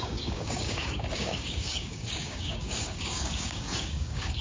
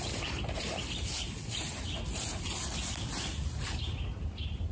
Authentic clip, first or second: second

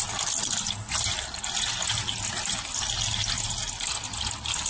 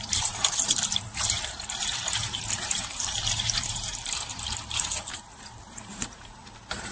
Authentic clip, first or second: first